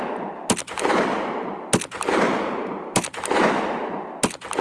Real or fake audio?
real